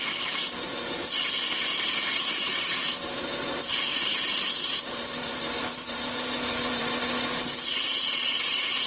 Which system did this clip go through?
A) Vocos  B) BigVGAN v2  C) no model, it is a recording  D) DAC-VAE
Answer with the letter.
B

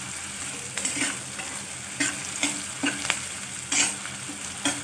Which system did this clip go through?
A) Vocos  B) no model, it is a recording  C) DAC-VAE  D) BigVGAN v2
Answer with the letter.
B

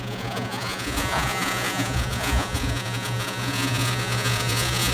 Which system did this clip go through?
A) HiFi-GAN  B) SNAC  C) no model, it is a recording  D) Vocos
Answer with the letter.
D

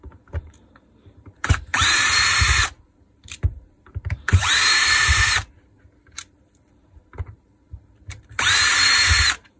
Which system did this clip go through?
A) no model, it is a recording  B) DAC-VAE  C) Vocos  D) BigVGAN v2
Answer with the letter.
D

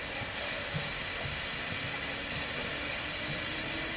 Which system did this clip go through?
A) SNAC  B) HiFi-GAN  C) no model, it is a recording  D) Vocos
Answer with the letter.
C